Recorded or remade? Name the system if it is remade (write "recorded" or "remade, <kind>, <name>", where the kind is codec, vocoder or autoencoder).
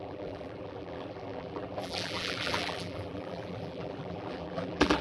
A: remade, vocoder, BigVGAN v2